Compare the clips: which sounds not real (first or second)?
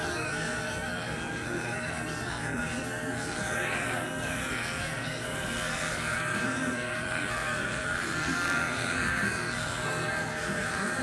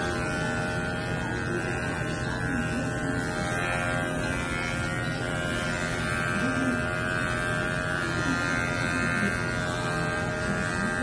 first